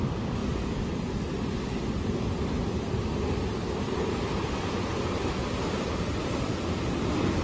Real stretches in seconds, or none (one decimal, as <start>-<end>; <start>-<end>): 0.0-7.4